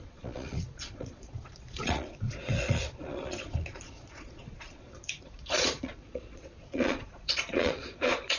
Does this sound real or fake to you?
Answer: fake